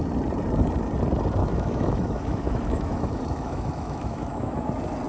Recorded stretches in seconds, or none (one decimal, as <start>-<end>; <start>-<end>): 0.0-1.4; 4.5-5.1